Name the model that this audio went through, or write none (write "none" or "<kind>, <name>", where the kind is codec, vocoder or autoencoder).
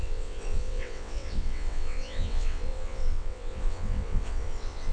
vocoder, WaveNeXt